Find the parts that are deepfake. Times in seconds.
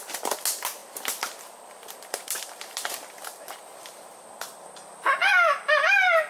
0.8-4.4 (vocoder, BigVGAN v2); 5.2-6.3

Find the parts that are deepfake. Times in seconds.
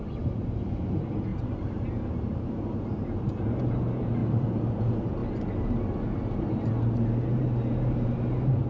0.0-4.2 (vocoder, BigVGAN v2); 4.7-5.2; 7.3-8.7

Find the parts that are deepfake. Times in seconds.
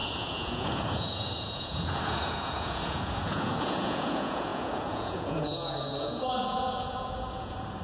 0.0-7.8 (vocoder, Vocos)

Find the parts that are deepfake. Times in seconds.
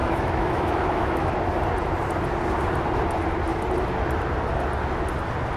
0.0-1.3 (autoencoder, DAC-VAE)